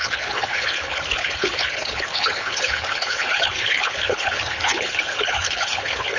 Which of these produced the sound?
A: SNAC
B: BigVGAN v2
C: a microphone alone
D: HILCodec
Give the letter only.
D